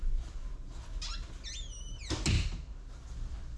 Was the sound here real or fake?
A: real